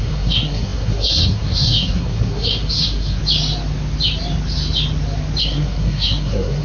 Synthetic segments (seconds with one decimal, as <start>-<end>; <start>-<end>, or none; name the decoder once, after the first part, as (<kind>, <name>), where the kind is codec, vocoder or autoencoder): 0.0-3.2 (codec, SNAC); 5.4-6.6